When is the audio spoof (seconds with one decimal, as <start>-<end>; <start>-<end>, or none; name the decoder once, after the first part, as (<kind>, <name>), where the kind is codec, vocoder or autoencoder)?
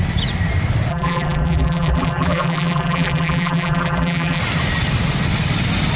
0.9-4.4 (vocoder, BigVGAN v2)